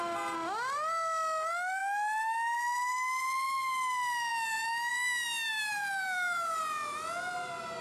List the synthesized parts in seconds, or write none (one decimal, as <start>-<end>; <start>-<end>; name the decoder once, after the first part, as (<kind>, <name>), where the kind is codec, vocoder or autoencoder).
5.5-6.6 (vocoder, BigVGAN v2)

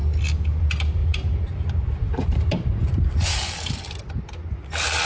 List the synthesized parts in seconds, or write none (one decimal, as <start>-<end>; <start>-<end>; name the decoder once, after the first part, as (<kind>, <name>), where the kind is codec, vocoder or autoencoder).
1.0-4.1 (vocoder, BigVGAN v2)

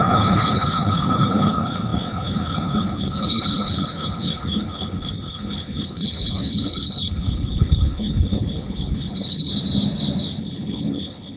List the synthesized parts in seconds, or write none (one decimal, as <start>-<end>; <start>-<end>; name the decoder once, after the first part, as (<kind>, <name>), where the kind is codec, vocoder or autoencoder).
0.0-9.5 (codec, HILCodec); 10.4-11.4

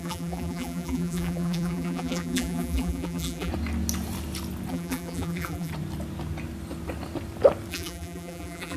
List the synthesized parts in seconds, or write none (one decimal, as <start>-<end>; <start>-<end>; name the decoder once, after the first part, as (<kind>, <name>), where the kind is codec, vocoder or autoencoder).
0.0-3.5 (vocoder, BigVGAN v2); 4.7-5.7; 7.7-8.8

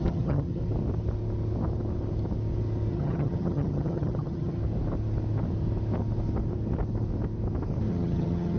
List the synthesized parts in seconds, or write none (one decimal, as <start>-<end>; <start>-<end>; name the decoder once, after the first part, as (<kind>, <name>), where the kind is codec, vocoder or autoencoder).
0.0-0.6 (vocoder, HiFi-GAN); 2.9-4.6; 7.9-8.6

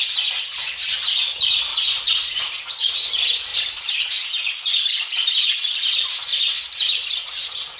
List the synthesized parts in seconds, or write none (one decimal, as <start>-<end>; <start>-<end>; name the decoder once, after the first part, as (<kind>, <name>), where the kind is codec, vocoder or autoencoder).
1.7-2.9 (vocoder, Vocos)